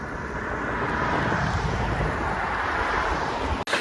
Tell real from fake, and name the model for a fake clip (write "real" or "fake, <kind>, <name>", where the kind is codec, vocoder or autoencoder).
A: real